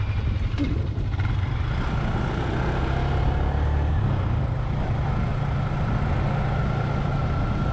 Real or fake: real